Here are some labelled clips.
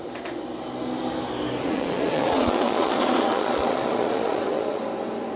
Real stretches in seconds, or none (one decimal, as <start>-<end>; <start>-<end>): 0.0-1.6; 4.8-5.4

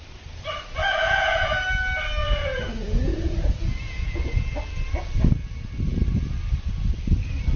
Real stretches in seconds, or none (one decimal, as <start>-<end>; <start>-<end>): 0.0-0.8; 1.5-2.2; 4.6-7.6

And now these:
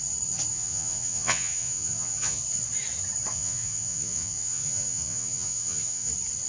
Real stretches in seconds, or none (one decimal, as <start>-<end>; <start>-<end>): 0.0-0.5; 2.4-3.3; 6.1-6.5